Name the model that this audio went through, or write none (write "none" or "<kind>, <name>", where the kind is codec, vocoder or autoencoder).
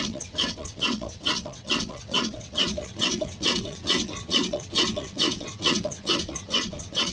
vocoder, WaveNeXt